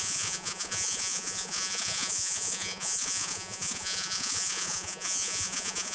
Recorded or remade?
remade